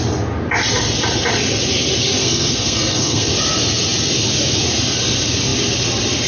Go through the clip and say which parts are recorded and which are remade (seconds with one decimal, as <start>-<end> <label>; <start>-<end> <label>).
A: 0.0-2.2 recorded; 2.2-3.3 remade; 3.3-6.3 recorded